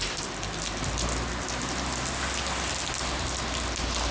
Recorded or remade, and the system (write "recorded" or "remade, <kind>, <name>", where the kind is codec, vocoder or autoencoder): recorded